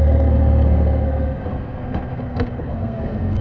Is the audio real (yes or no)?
no